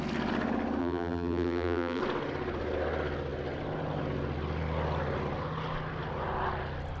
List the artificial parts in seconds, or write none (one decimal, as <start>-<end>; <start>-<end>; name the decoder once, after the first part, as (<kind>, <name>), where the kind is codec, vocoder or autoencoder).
0.8-2.0 (vocoder, BigVGAN v2)